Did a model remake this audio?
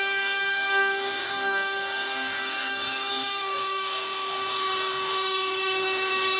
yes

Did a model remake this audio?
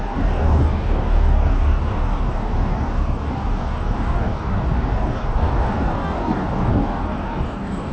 yes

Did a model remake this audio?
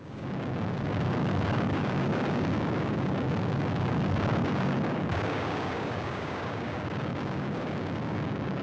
yes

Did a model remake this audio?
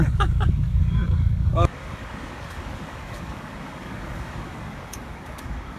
yes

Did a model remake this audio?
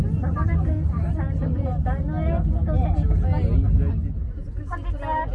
no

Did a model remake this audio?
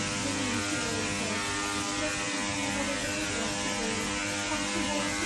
no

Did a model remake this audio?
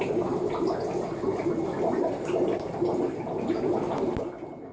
no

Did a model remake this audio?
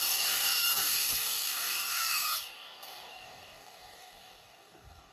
yes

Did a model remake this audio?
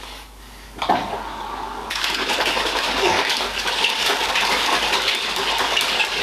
yes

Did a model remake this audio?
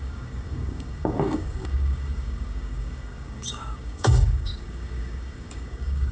yes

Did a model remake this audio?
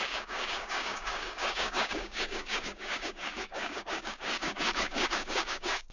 yes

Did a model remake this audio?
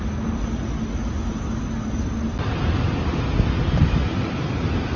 no